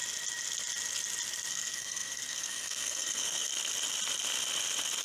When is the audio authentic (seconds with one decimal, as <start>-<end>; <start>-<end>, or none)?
0.0-1.5; 3.5-5.0